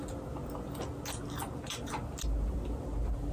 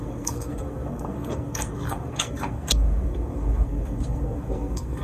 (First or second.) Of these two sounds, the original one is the first